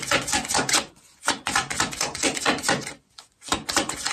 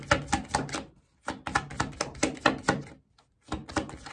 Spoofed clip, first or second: first